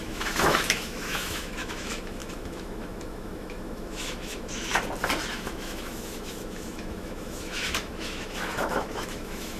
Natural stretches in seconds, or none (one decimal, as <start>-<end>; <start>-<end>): 4.7-5.3